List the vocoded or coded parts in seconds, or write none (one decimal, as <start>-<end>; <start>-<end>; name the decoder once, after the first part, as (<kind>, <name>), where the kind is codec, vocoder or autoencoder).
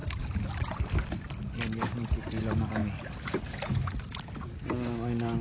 none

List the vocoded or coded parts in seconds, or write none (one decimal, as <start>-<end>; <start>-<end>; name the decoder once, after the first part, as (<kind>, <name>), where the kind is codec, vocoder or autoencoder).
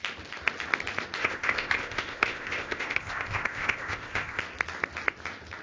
1.2-4.4 (codec, ZipCodec)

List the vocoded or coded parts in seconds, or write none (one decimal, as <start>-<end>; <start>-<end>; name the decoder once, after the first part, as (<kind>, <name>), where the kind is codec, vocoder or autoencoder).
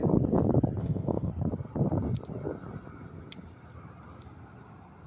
0.8-1.3 (codec, ZipCodec)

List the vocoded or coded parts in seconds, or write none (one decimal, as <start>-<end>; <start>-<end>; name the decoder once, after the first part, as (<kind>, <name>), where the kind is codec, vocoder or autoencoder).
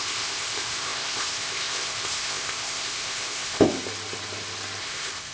0.0-3.7 (codec, ZipCodec); 4.8-5.3